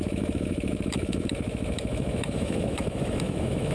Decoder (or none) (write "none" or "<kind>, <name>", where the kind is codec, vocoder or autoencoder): autoencoder, DAC-VAE